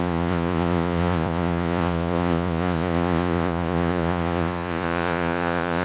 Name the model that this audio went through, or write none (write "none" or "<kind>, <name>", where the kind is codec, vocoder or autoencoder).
vocoder, Vocos